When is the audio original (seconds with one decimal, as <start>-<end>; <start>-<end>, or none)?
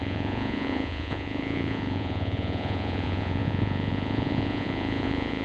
none